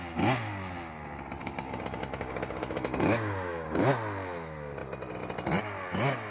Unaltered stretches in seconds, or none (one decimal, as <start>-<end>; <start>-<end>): 0.0-1.4; 3.9-6.3